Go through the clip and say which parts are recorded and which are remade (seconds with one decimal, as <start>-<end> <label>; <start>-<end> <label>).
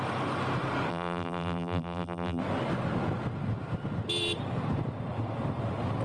0.0-0.9 recorded; 0.9-2.4 remade; 2.4-6.0 recorded